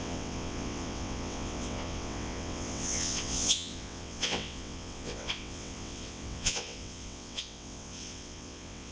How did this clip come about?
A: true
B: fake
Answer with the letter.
B